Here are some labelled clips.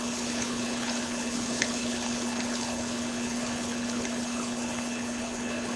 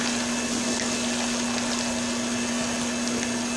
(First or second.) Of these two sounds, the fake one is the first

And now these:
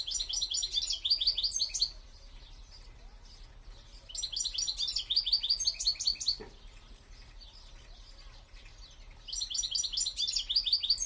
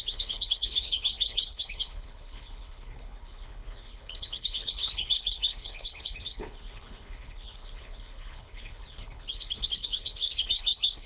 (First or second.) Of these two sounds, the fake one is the second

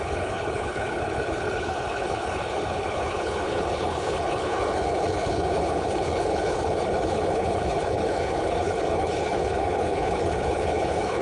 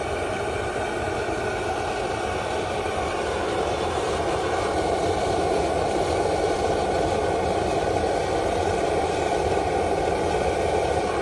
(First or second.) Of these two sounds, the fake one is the first